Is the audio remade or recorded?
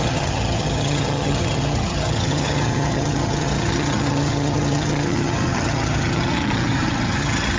remade